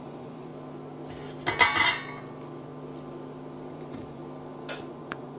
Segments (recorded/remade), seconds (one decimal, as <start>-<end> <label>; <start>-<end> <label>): 0.0-0.5 remade; 0.5-3.7 recorded; 3.7-4.2 remade; 4.2-4.9 recorded; 4.9-5.4 remade